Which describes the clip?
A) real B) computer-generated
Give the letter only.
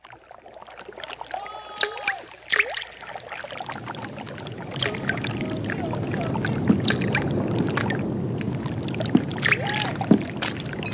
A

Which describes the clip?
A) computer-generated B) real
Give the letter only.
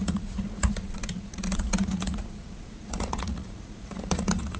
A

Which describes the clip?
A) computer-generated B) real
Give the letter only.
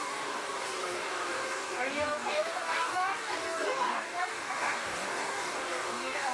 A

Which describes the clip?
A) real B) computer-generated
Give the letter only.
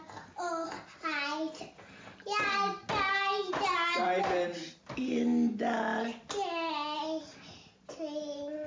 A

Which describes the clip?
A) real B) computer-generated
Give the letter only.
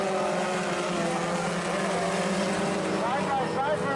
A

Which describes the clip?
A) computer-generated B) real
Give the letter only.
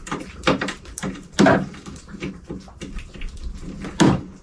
B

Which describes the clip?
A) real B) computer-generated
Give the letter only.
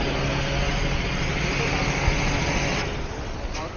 A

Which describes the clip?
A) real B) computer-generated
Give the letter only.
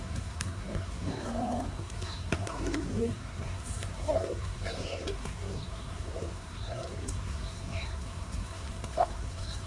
B